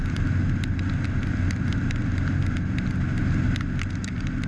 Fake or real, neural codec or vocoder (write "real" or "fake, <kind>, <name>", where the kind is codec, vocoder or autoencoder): real